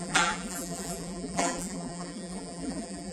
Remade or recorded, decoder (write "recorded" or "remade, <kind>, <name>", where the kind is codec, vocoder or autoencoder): remade, vocoder, BigVGAN v2